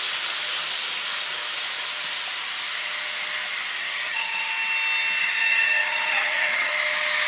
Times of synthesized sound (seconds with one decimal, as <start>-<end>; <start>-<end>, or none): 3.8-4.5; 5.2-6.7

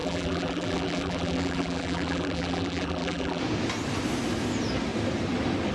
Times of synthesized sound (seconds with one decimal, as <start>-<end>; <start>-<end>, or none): 0.0-3.4

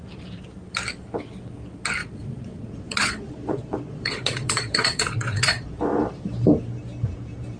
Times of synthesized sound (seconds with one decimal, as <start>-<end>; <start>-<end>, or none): 2.0-5.8

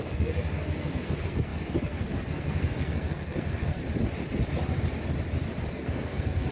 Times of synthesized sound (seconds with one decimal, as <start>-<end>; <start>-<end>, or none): 0.0-3.8; 5.7-6.5